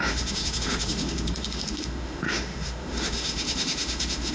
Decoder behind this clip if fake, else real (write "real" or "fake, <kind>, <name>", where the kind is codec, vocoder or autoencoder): fake, autoencoder, DAC-VAE